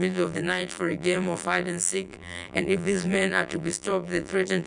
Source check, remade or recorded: remade